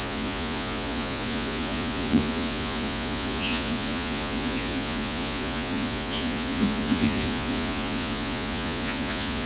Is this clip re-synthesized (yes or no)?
yes